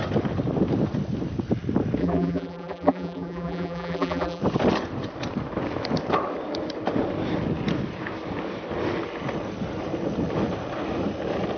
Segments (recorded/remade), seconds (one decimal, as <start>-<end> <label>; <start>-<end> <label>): 0.0-2.0 recorded; 2.0-4.4 remade; 4.4-11.6 recorded